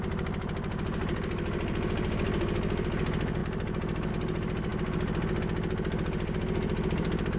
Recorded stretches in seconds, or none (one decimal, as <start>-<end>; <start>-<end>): 0.0-7.4